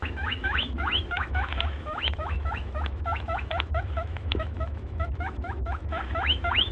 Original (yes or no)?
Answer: no